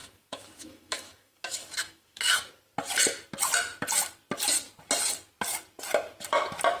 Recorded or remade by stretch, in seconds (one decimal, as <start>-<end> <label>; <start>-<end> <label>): 0.0-2.3 remade; 2.3-6.8 recorded